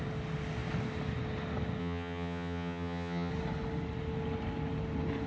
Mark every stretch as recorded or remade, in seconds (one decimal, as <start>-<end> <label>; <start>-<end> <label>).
0.0-1.8 recorded; 1.8-3.3 remade; 3.3-5.3 recorded